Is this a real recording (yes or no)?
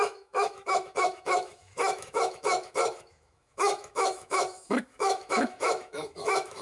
no